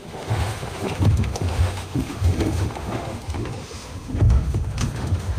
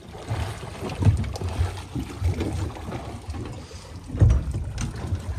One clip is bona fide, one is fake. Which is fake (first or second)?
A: first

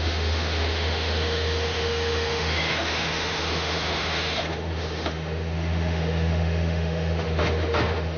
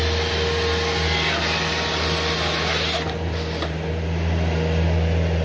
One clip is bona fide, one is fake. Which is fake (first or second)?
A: first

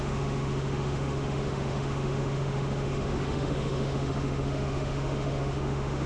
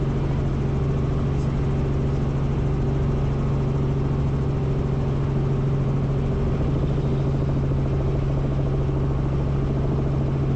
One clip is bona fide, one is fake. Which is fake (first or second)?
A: first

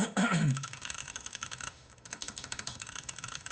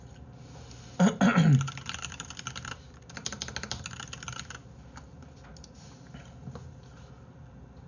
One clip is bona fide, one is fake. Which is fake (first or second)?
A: first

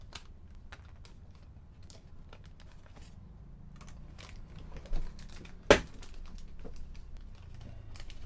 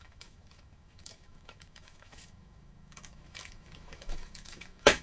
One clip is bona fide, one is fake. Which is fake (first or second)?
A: second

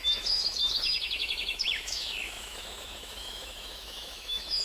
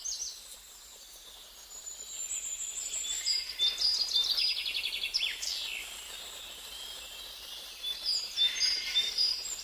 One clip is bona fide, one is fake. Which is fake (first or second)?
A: first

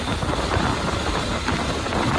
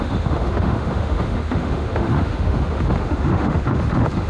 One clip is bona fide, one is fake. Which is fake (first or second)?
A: second